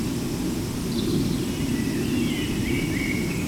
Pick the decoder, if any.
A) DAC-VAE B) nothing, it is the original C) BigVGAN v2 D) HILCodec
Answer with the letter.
B